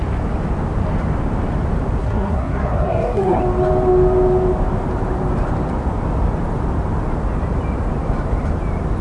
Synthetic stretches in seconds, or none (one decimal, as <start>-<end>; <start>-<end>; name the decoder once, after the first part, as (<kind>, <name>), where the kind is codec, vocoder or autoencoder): 2.0-3.4 (codec, SNAC)